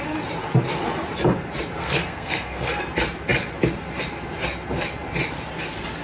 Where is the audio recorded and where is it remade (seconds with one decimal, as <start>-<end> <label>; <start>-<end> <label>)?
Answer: 0.0-1.8 recorded; 1.8-2.8 remade; 2.8-6.0 recorded